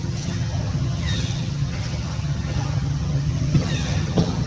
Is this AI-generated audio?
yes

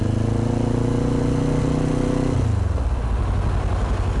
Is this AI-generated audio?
no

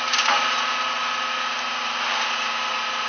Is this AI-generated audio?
no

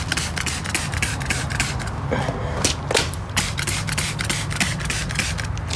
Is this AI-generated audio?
no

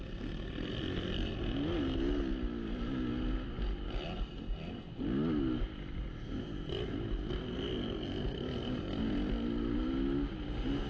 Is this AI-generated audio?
no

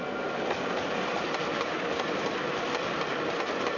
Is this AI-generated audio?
no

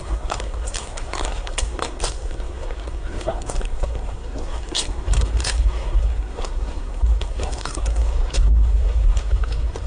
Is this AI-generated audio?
yes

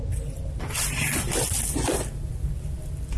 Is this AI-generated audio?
no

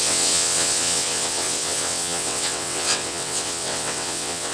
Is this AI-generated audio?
yes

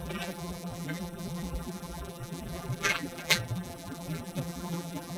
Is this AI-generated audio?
yes